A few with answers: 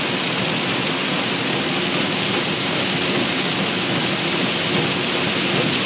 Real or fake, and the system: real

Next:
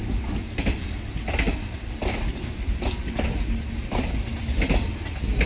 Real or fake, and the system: real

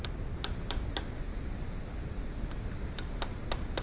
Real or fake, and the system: real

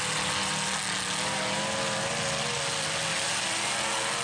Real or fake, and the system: real